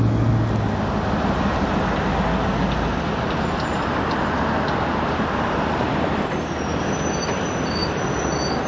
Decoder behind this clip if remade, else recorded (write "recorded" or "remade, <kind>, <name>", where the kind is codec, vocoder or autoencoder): recorded